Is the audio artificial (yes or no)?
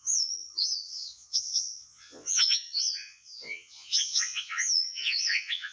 yes